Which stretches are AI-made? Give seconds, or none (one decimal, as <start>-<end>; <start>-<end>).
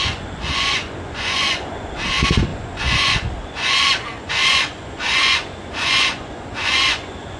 0.0-7.4